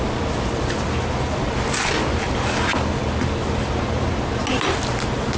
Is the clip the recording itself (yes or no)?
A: yes